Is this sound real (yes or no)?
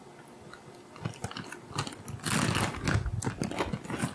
yes